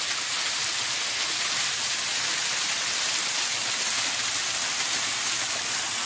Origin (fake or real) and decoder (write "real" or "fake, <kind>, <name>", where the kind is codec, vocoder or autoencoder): real